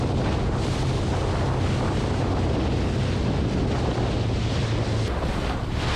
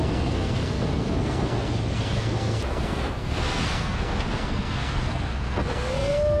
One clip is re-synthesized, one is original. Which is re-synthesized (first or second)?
second